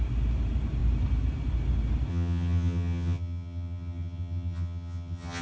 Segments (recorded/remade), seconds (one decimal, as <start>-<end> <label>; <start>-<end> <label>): 0.0-2.1 recorded; 2.1-5.4 remade